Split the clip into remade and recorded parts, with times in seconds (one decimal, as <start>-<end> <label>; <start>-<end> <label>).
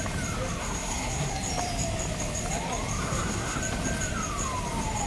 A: 0.0-0.6 recorded; 0.6-1.3 remade; 1.3-3.0 recorded; 3.0-3.6 remade; 3.6-5.1 recorded